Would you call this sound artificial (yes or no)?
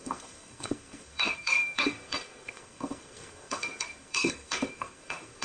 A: yes